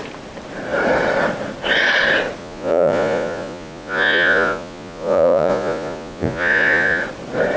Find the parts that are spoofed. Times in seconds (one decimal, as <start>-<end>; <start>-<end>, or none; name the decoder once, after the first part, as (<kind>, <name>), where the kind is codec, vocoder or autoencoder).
2.4-7.0 (vocoder, Vocos)

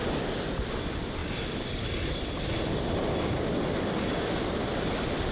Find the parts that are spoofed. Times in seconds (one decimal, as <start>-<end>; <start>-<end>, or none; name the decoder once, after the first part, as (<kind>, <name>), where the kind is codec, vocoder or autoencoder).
none

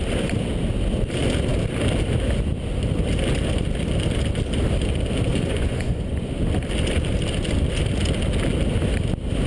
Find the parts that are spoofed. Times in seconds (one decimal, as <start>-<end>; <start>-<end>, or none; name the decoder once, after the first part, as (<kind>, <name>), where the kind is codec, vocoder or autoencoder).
5.3-6.3 (vocoder, Vocos)

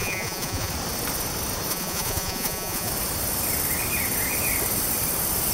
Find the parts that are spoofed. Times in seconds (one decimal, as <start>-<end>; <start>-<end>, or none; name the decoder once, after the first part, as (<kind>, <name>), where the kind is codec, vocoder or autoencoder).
0.0-0.7 (vocoder, Vocos); 1.7-2.9

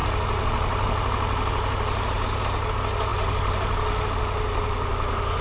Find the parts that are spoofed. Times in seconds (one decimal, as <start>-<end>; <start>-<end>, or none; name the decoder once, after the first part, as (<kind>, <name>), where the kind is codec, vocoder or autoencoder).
none